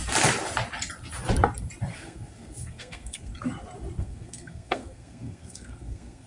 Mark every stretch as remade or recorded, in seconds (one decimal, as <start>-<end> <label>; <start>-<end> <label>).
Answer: 0.0-1.9 recorded; 1.9-3.3 remade; 3.3-4.0 recorded; 4.0-6.3 remade